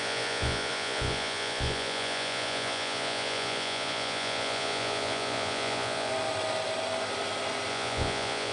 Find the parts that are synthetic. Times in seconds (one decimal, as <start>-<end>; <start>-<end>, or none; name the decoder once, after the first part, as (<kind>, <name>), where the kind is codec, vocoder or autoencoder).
0.0-6.1 (vocoder, Vocos); 7.7-8.5